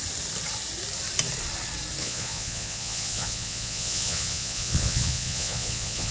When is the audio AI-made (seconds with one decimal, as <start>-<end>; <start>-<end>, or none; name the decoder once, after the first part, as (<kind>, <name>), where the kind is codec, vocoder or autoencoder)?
2.0-6.1 (vocoder, Vocos)